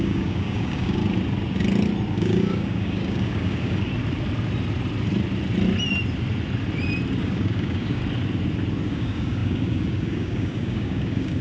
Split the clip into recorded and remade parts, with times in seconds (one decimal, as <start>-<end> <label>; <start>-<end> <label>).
0.0-1.0 remade; 1.0-2.1 recorded; 2.1-3.9 remade; 3.9-7.2 recorded; 7.2-8.0 remade; 8.0-8.9 recorded; 8.9-11.4 remade